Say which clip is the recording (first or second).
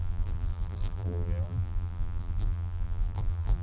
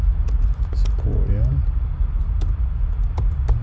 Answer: second